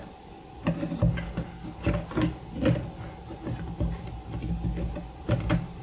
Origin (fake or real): real